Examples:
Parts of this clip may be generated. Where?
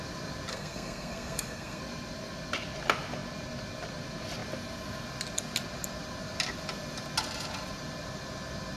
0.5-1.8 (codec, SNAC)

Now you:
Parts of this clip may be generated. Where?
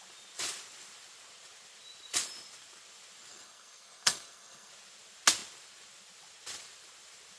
3.3-4.7 (codec, SNAC)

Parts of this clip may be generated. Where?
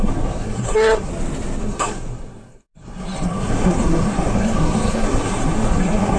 0.0-1.1 (codec, SNAC); 1.6-6.2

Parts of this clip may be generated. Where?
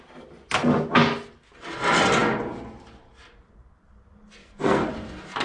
4.4-4.9 (codec, SNAC)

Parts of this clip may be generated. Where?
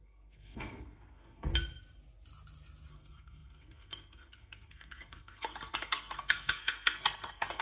0.0-1.5 (codec, SNAC); 2.9-7.6